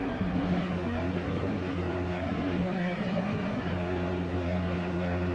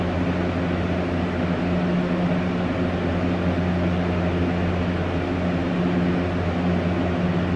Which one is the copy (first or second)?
first